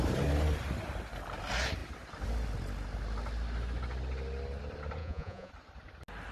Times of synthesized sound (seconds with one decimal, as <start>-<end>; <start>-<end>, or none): 5.0-5.5